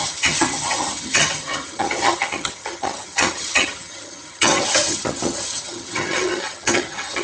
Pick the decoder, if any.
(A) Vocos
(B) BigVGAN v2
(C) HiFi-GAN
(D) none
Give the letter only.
C